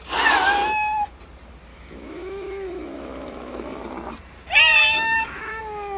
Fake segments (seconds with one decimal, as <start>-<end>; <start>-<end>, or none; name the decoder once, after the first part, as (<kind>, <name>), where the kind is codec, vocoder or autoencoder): 1.7-3.8 (autoencoder, DAC-VAE); 4.8-5.6